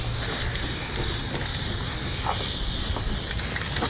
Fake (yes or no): no